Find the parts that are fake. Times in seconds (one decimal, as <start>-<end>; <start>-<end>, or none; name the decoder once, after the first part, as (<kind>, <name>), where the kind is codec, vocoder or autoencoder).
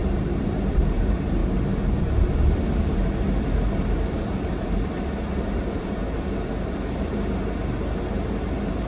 0.0-1.4 (vocoder, BigVGAN v2); 5.6-8.9